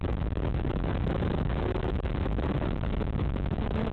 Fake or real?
fake